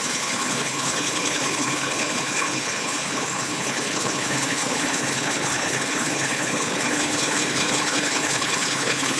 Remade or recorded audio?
remade